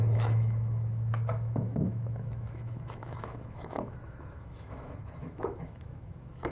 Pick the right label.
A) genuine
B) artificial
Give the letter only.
B